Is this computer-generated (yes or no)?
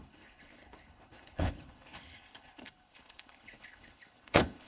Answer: yes